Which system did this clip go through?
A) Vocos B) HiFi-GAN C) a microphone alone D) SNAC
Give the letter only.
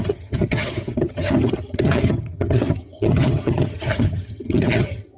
B